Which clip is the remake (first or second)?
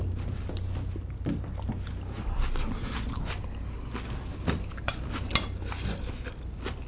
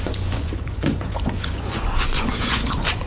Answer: second